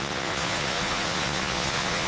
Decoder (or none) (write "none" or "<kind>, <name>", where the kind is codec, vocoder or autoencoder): vocoder, Vocos